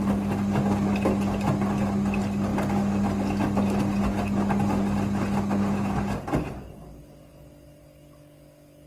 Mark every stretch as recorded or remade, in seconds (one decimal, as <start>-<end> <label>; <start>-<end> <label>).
0.0-8.9 recorded